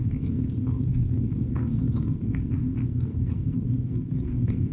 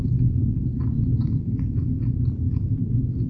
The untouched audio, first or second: second